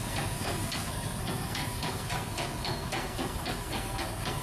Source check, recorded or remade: remade